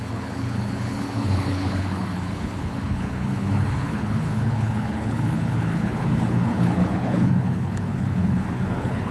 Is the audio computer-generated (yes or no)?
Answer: yes